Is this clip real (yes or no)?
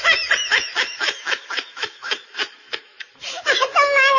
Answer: no